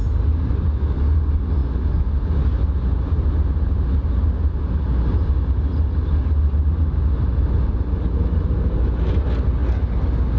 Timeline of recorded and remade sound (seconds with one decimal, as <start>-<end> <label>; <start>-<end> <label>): 0.0-10.4 recorded